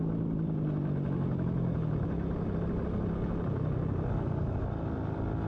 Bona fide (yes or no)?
yes